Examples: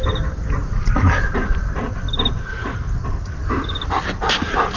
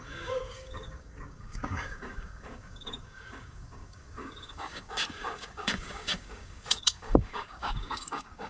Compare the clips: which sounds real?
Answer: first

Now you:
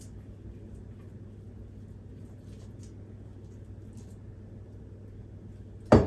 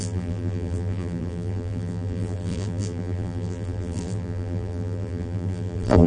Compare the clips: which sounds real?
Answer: first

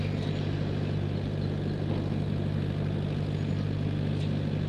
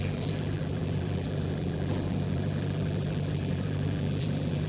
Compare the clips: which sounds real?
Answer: first